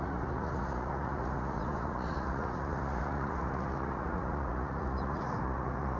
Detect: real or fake fake